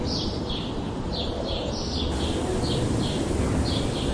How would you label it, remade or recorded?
recorded